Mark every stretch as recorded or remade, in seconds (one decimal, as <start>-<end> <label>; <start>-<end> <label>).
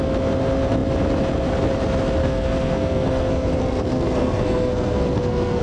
0.0-2.2 recorded; 2.2-5.6 remade